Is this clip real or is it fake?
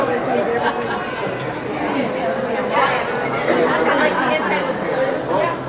real